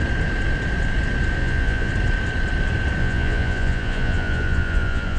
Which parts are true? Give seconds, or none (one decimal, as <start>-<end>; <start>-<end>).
0.0-1.4; 1.9-3.0

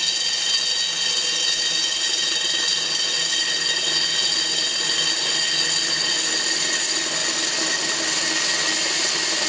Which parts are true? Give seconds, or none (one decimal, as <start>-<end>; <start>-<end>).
0.0-9.5

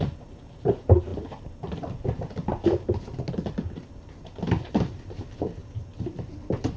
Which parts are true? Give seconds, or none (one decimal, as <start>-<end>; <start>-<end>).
0.0-6.8